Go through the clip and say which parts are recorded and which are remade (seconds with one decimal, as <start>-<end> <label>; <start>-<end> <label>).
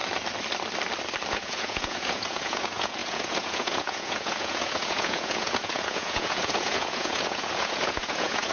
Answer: 0.0-1.3 recorded; 1.3-8.5 remade